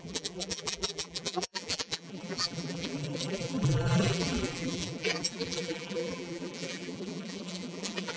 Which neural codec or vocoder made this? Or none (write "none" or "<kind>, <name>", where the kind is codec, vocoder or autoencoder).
vocoder, BigVGAN v2